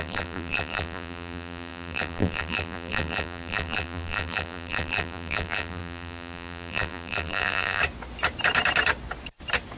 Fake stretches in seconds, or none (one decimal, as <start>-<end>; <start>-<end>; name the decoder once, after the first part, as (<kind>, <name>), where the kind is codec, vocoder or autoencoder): 0.0-7.8 (vocoder, BigVGAN v2)